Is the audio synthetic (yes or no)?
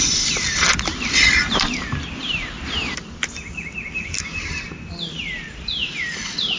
no